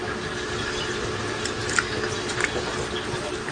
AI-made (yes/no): no